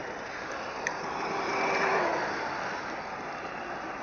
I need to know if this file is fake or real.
real